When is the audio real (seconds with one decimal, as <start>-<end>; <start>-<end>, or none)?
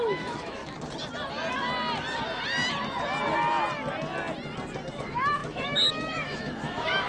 0.6-4.9